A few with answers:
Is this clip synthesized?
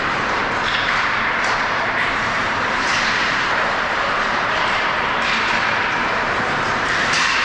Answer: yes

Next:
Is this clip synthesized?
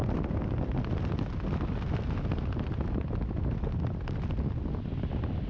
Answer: no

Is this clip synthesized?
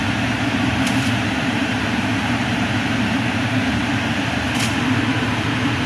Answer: yes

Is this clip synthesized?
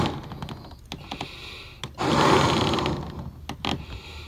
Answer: no